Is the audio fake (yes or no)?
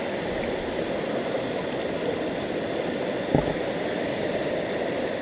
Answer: no